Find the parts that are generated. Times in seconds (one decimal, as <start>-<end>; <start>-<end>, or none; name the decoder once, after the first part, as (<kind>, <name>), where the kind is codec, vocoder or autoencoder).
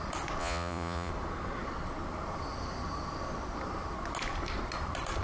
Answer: 0.4-1.1 (vocoder, Vocos)